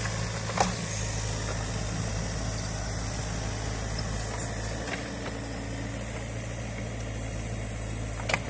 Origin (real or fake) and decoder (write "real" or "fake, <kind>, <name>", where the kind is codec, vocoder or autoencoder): real